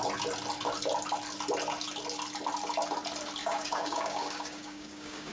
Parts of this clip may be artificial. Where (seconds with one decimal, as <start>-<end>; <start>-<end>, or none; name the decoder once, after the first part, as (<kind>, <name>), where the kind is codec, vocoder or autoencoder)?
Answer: 3.4-5.3 (codec, DAC)

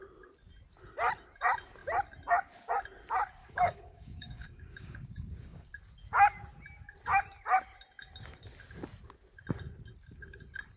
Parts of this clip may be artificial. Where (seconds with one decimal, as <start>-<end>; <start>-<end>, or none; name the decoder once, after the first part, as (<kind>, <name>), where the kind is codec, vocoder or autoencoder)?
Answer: 3.4-5.7 (codec, DAC)

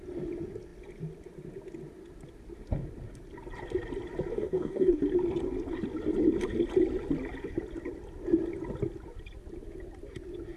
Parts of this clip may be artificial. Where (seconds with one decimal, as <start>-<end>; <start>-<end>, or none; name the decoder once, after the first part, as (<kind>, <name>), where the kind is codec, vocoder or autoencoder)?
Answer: 4.3-5.0 (codec, DAC)

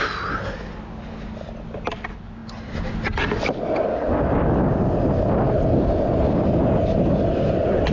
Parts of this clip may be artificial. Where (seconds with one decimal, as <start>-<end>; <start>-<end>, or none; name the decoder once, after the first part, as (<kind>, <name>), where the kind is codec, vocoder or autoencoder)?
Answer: none

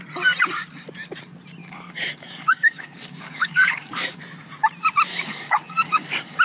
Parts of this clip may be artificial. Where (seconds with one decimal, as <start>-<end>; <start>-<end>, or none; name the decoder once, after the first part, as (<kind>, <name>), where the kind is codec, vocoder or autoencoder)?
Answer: 1.6-4.2 (codec, DAC); 5.1-6.4

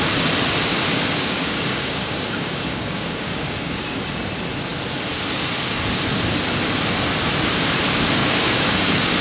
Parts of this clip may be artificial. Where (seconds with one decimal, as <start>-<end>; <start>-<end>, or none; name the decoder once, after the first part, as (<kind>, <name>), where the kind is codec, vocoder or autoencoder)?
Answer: 0.9-4.0 (codec, DAC); 8.2-9.2

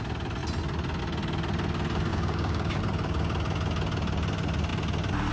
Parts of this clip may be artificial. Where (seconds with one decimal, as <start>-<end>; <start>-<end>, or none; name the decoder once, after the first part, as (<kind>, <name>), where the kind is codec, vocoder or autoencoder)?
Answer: 2.1-2.8 (codec, DAC)

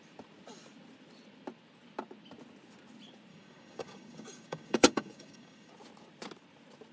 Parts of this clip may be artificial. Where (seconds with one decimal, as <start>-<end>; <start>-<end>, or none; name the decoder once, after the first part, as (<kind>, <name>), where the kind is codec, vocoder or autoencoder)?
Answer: 3.3-5.7 (codec, DAC)